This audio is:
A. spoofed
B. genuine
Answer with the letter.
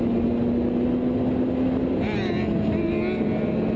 B